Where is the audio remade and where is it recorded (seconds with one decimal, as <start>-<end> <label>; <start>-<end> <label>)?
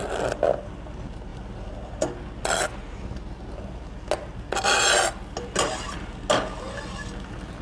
0.0-7.6 recorded